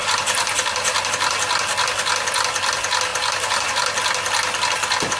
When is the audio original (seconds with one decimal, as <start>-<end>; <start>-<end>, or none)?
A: 1.1-3.1; 3.7-5.2

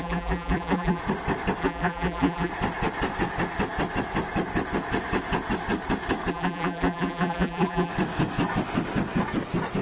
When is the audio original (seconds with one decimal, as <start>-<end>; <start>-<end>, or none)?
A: 1.0-1.6; 2.5-6.3; 7.9-9.8

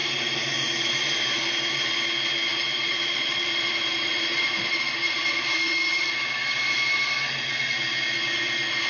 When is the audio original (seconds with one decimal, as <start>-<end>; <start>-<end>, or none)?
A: 1.9-2.5; 6.1-8.9

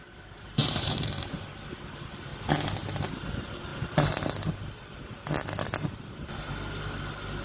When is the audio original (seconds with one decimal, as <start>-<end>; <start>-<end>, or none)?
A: 0.0-0.6; 1.4-7.4

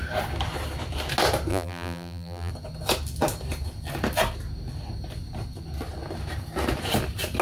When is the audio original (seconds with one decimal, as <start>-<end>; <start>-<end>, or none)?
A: 0.0-1.5; 2.5-7.4

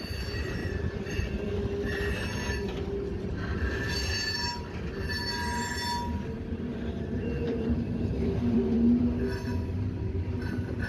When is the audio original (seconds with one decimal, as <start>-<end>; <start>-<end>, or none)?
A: 0.0-0.6; 1.6-6.7; 9.0-10.9

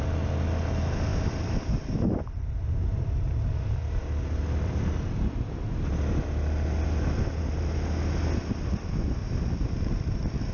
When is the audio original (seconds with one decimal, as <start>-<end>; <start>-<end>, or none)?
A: 0.0-1.1; 4.9-9.2

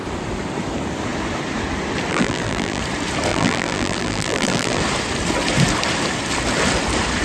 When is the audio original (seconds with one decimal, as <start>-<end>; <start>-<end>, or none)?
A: 0.0-2.1; 2.8-3.3; 4.8-7.2